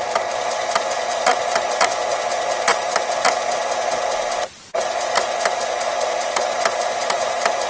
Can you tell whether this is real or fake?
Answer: real